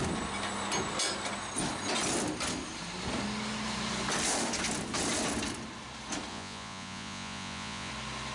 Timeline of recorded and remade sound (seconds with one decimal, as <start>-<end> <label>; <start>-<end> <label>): 0.0-6.3 recorded; 6.3-7.9 remade; 7.9-8.3 recorded